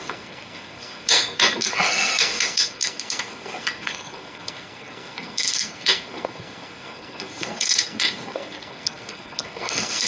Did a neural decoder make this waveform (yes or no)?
yes